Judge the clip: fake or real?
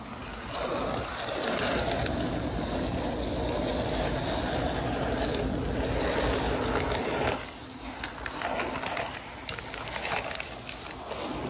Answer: real